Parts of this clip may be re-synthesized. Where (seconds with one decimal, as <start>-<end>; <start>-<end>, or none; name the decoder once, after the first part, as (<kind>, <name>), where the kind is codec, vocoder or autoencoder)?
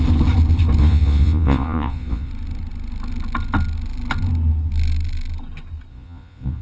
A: 0.8-2.3 (vocoder, Vocos); 5.9-6.6